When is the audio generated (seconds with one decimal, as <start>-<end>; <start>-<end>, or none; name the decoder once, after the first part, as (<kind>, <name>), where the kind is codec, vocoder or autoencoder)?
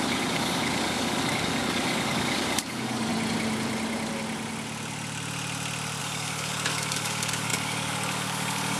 0.0-3.1 (codec, DAC); 6.0-8.8